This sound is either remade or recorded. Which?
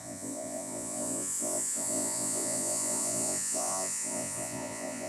remade